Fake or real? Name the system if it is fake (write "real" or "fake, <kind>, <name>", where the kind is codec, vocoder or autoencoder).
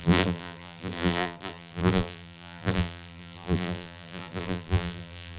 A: fake, vocoder, BigVGAN v2